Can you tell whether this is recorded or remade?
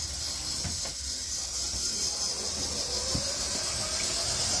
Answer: recorded